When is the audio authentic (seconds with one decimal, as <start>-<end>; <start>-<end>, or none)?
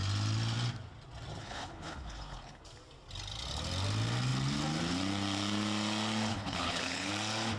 0.0-1.4; 2.6-6.3; 7.1-7.6